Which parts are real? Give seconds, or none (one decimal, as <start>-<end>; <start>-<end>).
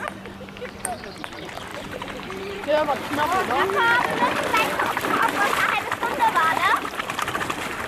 0.0-1.7; 4.0-4.5